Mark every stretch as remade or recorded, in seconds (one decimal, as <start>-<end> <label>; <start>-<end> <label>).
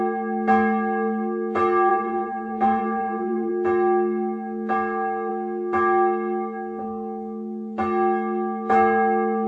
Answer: 0.0-1.9 recorded; 1.9-3.5 remade; 3.5-9.5 recorded